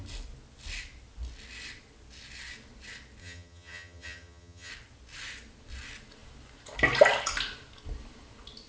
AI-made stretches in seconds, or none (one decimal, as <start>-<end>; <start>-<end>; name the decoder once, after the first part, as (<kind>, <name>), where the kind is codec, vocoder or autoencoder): 3.2-4.7 (vocoder, HiFi-GAN)